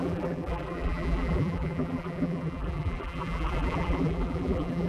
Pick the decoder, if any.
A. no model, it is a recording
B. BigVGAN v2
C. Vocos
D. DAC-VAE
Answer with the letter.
B